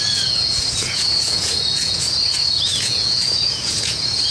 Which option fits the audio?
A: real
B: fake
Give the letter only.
B